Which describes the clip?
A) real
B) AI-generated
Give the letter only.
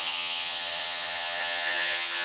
B